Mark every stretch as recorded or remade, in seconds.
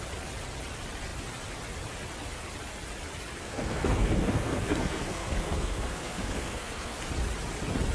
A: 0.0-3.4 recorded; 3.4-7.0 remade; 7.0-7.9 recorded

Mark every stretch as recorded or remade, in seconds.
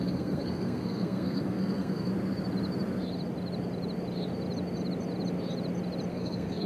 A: 0.0-2.1 remade; 2.1-6.1 recorded; 6.1-6.7 remade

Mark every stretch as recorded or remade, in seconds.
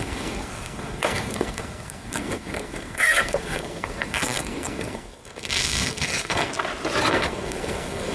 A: 0.0-6.5 remade; 6.5-7.1 recorded; 7.1-8.1 remade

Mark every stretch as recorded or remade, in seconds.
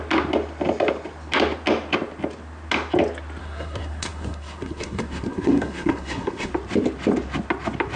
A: 0.0-3.4 recorded; 3.4-6.5 remade; 6.5-8.0 recorded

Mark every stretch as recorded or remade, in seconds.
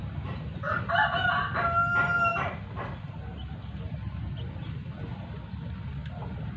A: 0.0-6.6 recorded